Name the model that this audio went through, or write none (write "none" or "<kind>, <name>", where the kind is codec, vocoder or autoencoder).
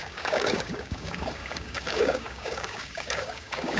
codec, DAC